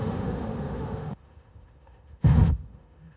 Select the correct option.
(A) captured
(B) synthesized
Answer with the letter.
B